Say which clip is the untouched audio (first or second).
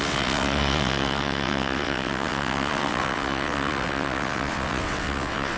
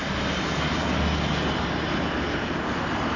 second